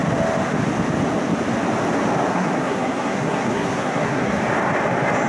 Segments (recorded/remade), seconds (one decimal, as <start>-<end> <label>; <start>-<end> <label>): 0.0-2.3 recorded; 2.3-4.4 remade; 4.4-5.3 recorded

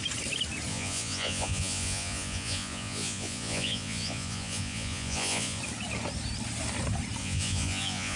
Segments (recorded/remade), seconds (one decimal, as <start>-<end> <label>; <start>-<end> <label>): 0.0-0.7 recorded; 0.7-5.6 remade; 5.6-7.2 recorded; 7.2-8.2 remade

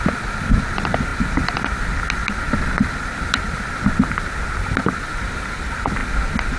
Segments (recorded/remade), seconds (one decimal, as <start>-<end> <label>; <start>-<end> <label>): 0.0-6.6 recorded

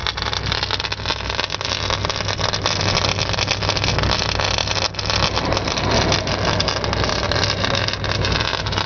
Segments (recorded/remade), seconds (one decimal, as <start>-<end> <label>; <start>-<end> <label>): 0.0-8.9 recorded

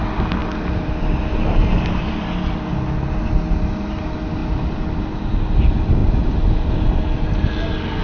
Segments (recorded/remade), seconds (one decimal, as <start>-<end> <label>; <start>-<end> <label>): 0.0-8.0 recorded